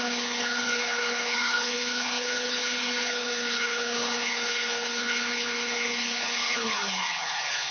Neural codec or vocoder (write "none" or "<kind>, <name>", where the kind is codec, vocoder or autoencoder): codec, HILCodec